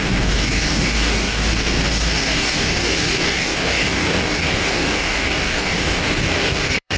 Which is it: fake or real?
fake